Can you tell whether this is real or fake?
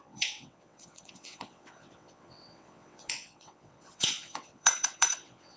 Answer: fake